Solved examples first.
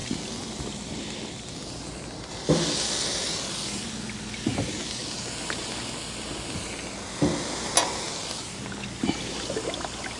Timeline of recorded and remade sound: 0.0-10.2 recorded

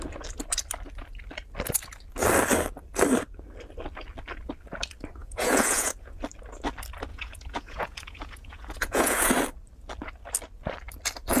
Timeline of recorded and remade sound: 0.0-5.2 recorded; 5.2-6.2 remade; 6.2-7.1 recorded; 7.1-9.3 remade; 9.3-11.4 recorded

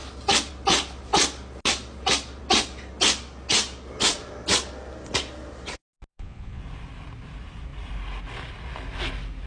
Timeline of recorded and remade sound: 0.0-6.1 recorded; 6.1-6.6 remade; 6.6-9.5 recorded